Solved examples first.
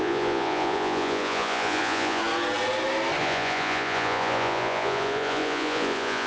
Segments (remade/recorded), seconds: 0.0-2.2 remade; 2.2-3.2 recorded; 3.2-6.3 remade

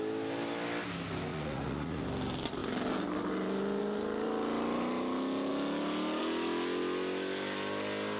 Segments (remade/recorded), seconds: 0.0-1.3 recorded; 1.3-2.0 remade; 2.0-8.2 recorded

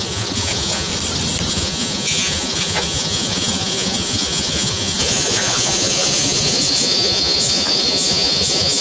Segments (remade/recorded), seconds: 0.0-0.9 remade; 0.9-1.5 recorded; 1.5-8.8 remade

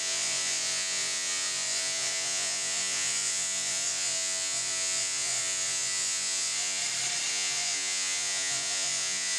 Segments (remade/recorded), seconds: 0.0-6.8 remade; 6.8-7.3 recorded; 7.3-9.4 remade

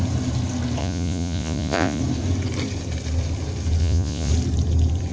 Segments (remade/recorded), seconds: 0.0-0.8 recorded; 0.8-2.0 remade; 2.0-3.8 recorded; 3.8-4.3 remade; 4.3-5.1 recorded

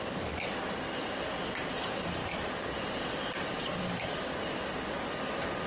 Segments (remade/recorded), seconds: 0.0-5.7 recorded